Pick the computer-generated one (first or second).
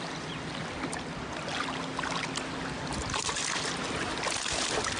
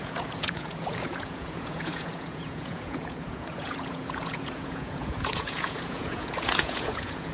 second